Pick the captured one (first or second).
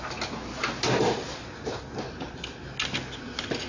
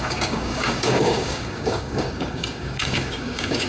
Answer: first